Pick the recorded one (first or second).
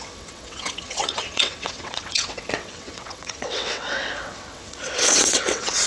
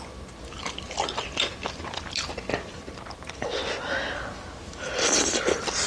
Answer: second